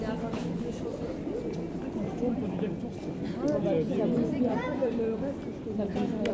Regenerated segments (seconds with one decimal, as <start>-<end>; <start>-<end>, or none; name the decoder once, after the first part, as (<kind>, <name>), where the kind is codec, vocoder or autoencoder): 4.8-6.3 (vocoder, BigVGAN v2)